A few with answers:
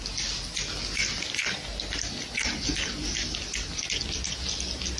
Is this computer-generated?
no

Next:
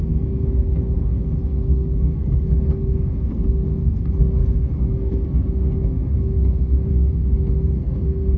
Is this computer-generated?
yes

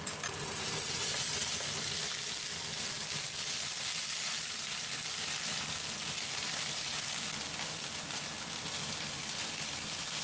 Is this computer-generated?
no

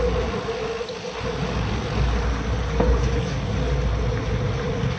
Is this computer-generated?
no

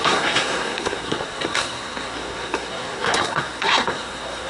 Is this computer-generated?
yes